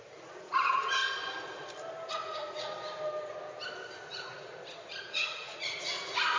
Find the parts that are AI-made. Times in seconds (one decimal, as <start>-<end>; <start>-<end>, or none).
0.0-1.0; 2.1-2.7; 4.1-6.4